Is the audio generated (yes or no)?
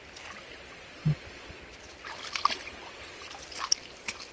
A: no